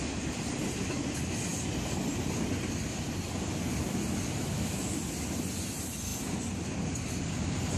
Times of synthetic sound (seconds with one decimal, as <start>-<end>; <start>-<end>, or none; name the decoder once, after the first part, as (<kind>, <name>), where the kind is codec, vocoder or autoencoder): none